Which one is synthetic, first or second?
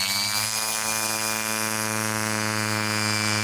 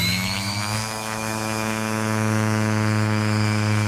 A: second